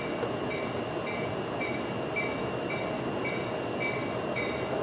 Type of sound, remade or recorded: remade